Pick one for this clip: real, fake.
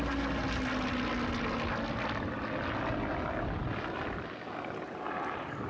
real